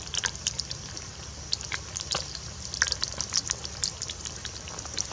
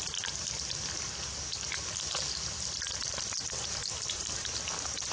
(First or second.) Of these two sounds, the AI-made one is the first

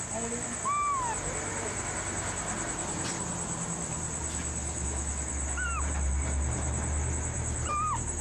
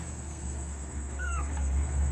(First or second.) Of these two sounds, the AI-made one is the second